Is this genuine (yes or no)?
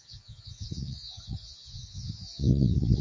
no